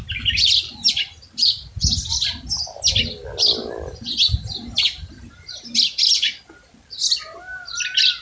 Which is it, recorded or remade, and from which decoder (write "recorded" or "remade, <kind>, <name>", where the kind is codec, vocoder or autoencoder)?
recorded